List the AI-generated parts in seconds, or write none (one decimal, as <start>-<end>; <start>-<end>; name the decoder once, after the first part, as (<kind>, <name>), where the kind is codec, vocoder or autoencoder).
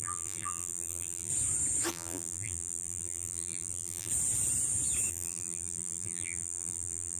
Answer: 0.0-1.3 (vocoder, BigVGAN v2); 1.9-4.1; 5.1-7.2